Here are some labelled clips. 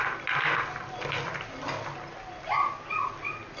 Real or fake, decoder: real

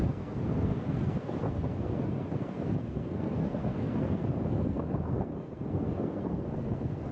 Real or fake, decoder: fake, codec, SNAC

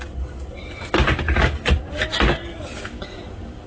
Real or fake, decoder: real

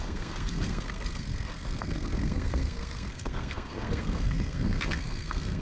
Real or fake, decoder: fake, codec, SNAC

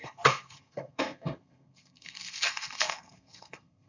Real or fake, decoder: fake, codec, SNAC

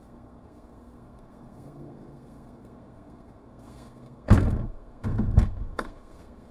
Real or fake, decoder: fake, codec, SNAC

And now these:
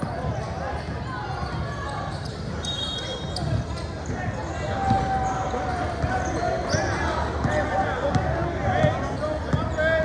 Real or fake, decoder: real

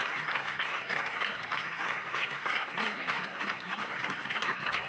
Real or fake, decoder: fake, codec, SNAC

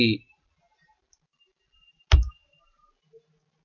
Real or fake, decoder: real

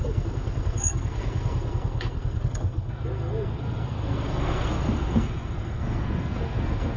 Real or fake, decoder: fake, codec, SNAC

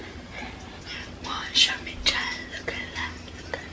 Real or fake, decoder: real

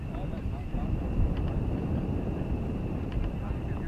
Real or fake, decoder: real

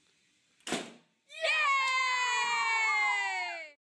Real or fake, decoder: real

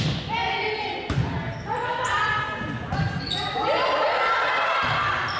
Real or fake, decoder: real